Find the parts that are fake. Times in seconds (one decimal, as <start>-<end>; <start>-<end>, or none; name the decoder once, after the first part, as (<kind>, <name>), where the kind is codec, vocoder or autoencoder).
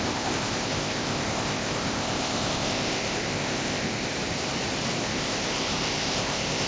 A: 0.0-4.1 (codec, ZipCodec); 5.0-6.7